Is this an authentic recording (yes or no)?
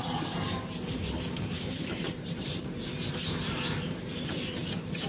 no